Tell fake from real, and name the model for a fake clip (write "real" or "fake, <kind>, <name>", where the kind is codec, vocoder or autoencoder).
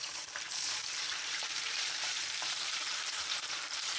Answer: fake, vocoder, BigVGAN v2